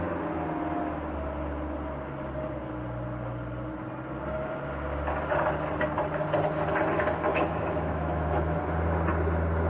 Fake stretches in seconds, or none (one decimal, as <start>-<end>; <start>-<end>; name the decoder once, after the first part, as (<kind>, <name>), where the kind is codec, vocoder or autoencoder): 7.3-8.6 (autoencoder, DAC-VAE)